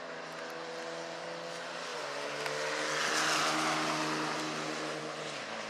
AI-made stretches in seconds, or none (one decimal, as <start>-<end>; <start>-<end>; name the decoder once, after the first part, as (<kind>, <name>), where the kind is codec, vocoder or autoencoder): none

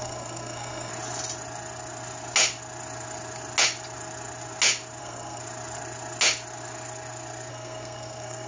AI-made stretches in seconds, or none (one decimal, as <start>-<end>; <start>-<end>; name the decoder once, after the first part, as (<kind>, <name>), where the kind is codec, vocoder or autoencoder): 0.0-0.9 (codec, SNAC); 5.0-5.4; 7.5-8.5

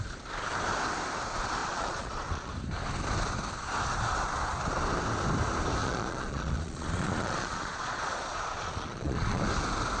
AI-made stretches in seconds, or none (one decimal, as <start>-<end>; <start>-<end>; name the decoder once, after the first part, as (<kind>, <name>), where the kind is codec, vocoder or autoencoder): 1.6-2.5 (vocoder, Vocos); 5.8-9.4